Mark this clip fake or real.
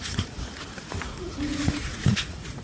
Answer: fake